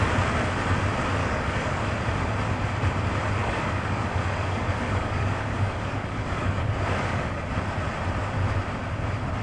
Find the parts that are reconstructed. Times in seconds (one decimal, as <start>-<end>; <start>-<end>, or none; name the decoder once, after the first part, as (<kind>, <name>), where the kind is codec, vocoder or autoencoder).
1.2-1.9 (codec, DAC); 3.4-7.4